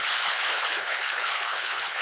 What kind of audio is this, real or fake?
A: fake